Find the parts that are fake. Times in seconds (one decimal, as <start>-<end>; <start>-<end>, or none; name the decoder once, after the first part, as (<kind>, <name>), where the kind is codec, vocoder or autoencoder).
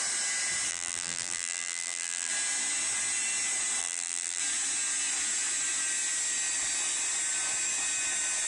0.7-2.3 (vocoder, BigVGAN v2); 3.8-4.4